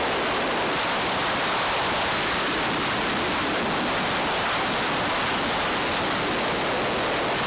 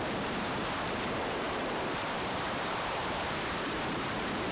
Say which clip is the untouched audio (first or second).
first